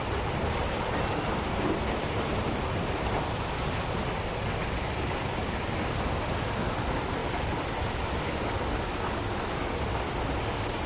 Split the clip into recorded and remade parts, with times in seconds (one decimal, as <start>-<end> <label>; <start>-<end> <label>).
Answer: 0.0-7.2 recorded; 7.2-8.1 remade; 8.1-10.9 recorded